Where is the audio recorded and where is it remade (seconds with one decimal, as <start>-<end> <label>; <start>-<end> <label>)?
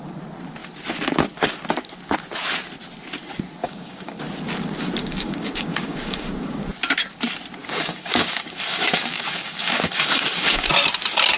0.0-3.6 recorded; 3.6-4.2 remade; 4.2-5.0 recorded; 5.0-6.7 remade; 6.7-7.6 recorded; 7.6-10.7 remade; 10.7-11.4 recorded